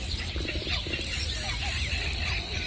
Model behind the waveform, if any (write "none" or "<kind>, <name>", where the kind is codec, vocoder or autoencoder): vocoder, BigVGAN v2